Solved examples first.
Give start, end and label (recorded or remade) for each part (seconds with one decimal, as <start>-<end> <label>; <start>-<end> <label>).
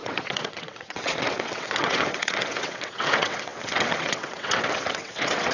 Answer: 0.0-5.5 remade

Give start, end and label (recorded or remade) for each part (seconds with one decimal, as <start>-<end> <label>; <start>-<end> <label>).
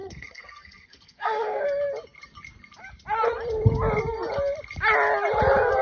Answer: 0.0-1.6 remade; 1.6-5.8 recorded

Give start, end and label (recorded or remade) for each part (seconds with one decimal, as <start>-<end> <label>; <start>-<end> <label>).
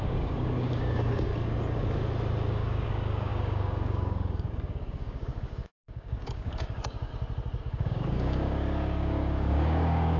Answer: 0.0-1.3 remade; 1.3-2.5 recorded; 2.5-7.1 remade; 7.1-7.6 recorded; 7.6-10.2 remade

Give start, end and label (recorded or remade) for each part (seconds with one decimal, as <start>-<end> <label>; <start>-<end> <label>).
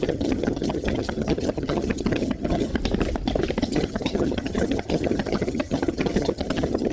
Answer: 0.0-2.7 remade; 2.7-3.6 recorded; 3.6-6.9 remade